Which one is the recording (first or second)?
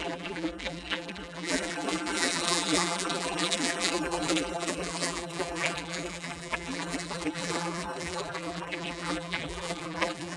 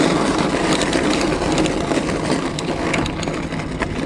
second